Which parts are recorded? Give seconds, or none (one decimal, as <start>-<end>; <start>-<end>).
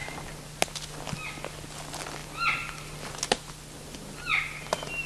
0.0-5.1